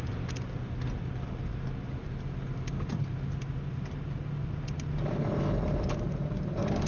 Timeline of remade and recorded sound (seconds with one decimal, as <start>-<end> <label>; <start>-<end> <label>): 0.0-6.9 recorded